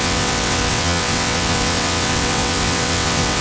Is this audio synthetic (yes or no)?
yes